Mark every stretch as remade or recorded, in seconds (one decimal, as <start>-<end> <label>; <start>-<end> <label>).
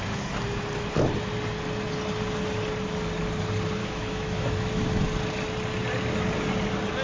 0.0-3.8 recorded; 3.8-5.0 remade; 5.0-7.0 recorded